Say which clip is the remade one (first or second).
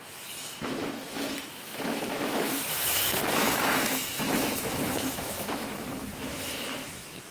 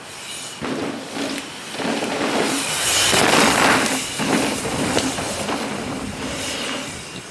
first